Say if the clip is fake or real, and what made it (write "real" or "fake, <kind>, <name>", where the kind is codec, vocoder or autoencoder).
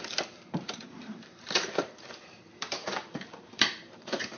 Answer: fake, vocoder, BigVGAN v2